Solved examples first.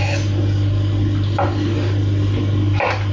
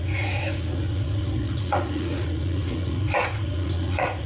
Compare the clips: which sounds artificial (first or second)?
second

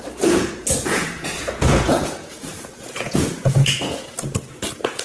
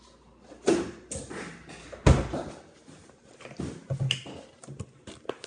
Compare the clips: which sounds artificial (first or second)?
first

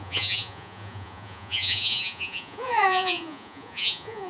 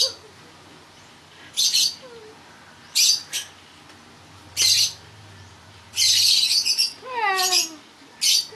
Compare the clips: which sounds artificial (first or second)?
first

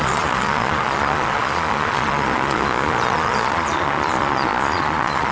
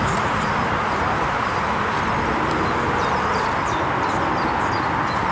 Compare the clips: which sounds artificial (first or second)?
first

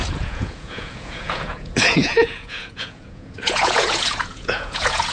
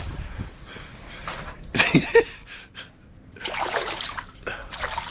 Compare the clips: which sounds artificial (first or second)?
first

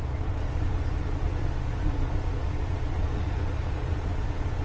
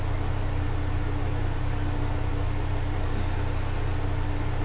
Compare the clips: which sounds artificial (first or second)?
first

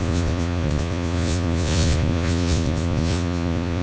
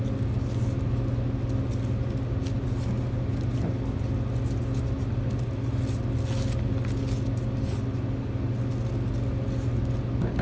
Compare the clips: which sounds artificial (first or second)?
first